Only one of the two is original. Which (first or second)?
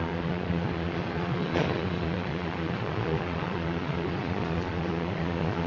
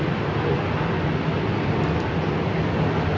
second